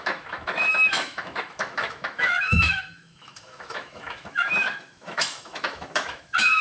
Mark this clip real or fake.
fake